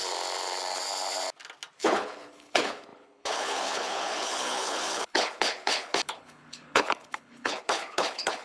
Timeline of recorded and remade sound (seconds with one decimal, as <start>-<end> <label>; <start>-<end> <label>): 0.0-1.8 recorded; 1.8-8.4 remade